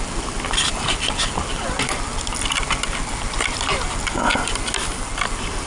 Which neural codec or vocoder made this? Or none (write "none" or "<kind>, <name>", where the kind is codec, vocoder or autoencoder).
none